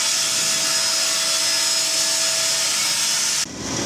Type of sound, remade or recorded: recorded